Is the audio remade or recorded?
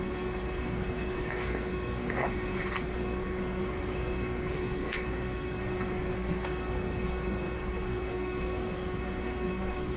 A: remade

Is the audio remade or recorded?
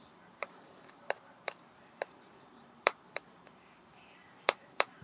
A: remade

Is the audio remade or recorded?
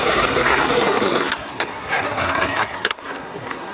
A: remade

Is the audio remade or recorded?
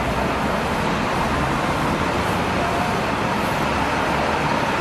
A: recorded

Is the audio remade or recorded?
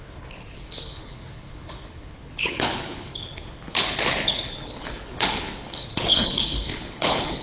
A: remade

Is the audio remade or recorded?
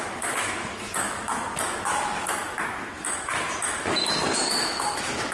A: remade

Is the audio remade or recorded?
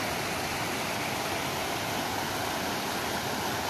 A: recorded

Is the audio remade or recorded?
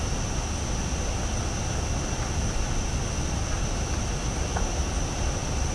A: recorded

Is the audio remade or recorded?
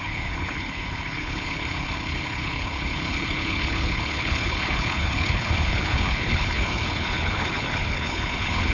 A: remade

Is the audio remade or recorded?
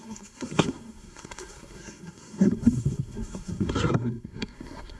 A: remade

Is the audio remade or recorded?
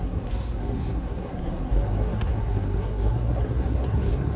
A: remade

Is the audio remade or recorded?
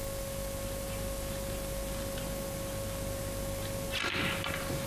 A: recorded